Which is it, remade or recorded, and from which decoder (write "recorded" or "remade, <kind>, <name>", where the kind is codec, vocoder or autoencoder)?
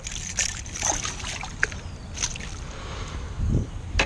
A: recorded